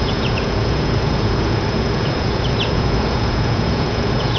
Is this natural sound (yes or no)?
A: no